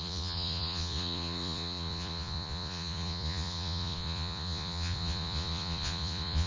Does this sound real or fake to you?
fake